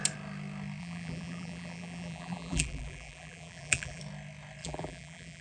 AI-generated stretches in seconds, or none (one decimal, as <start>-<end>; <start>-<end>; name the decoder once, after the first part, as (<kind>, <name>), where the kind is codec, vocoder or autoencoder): 0.8-4.0 (vocoder, BigVGAN v2); 4.6-5.4